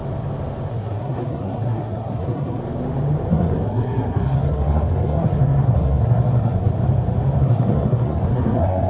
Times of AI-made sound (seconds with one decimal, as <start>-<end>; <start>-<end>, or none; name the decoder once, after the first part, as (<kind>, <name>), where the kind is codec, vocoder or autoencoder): 0.7-2.6 (codec, SNAC); 3.3-6.7; 7.4-8.9